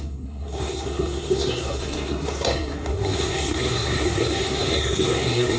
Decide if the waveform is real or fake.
fake